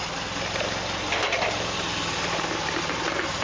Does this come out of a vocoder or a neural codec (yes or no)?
no